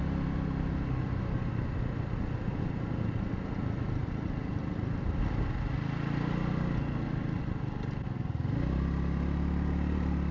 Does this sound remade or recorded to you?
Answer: recorded